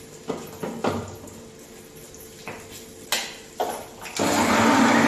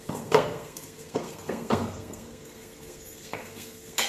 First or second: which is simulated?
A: second